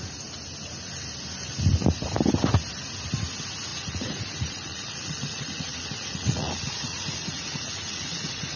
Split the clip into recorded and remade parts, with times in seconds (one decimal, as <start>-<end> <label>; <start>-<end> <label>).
0.0-3.7 recorded; 3.7-8.6 remade